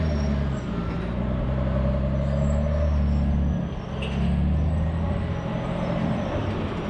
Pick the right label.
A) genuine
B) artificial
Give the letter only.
A